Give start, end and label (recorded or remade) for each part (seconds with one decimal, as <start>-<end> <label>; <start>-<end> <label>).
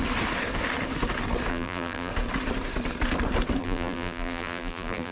0.0-1.5 recorded; 1.5-2.1 remade; 2.1-3.6 recorded; 3.6-5.1 remade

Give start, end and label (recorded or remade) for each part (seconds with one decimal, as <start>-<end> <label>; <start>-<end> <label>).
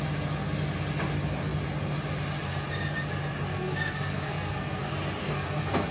0.0-3.5 recorded; 3.5-4.8 remade; 4.8-5.2 recorded; 5.2-5.9 remade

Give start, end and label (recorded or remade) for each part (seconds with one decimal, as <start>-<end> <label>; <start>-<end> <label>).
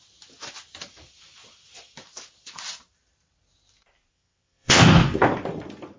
0.0-4.1 recorded; 4.1-4.8 remade; 4.8-6.0 recorded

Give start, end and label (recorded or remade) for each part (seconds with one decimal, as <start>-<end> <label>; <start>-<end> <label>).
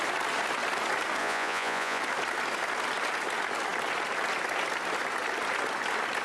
0.0-1.2 recorded; 1.2-2.0 remade; 2.0-6.2 recorded